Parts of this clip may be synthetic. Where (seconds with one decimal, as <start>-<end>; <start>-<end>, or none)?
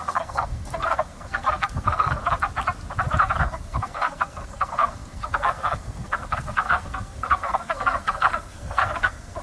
0.0-2.2; 3.4-9.4